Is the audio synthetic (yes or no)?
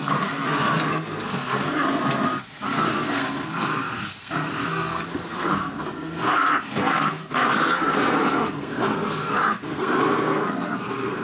yes